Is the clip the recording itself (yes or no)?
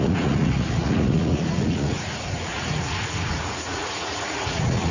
no